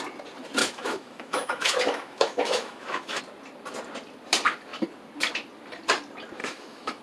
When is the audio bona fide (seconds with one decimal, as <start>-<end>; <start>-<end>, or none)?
0.0-0.6; 3.2-6.4